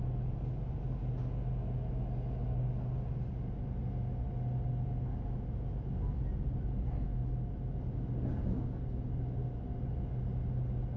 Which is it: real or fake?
real